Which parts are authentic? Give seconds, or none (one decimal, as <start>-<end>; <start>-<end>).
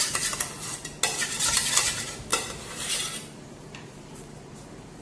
0.0-2.3; 4.5-5.0